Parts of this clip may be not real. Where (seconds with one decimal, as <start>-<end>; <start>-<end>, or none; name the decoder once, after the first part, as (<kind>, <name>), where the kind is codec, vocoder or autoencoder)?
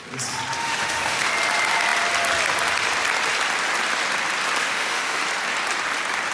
0.6-1.3 (autoencoder, DAC-VAE); 4.6-5.2